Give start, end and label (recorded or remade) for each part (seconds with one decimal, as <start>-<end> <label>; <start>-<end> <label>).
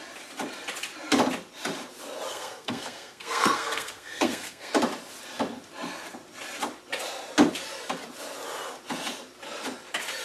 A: 0.0-2.3 recorded; 2.3-4.7 remade; 4.7-10.2 recorded